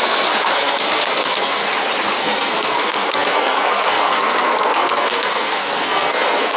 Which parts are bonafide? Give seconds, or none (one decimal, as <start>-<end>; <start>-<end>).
1.6-2.2